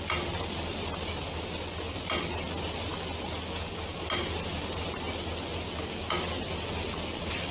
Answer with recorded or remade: recorded